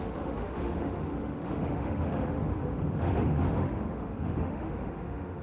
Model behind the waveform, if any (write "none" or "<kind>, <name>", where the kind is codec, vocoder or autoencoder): autoencoder, DAC-VAE